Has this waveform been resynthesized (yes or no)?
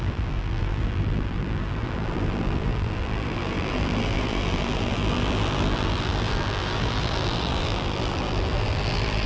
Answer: yes